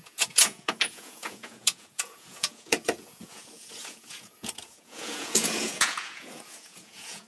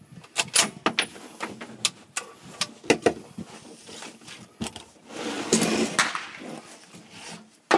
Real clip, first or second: second